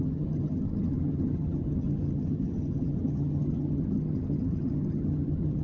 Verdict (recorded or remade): remade